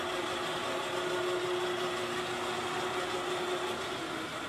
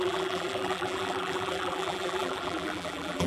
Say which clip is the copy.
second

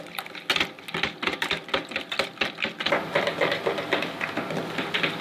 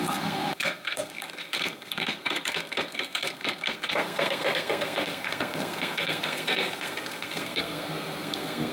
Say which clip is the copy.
second